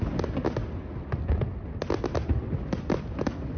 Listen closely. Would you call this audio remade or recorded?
recorded